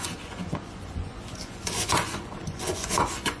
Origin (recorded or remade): remade